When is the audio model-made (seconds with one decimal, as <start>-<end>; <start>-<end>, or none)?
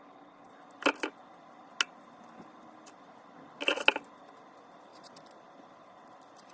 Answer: none